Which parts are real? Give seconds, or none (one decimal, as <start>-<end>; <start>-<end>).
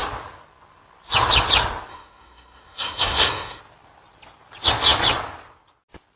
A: 0.0-1.9; 3.6-6.2